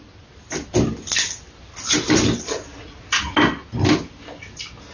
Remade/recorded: recorded